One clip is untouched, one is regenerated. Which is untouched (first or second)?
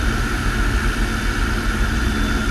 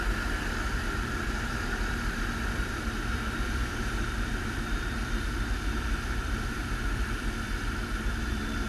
first